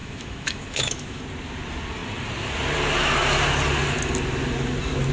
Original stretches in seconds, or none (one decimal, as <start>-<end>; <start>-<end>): 1.2-5.1